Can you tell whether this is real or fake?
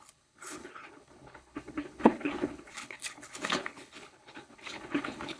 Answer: fake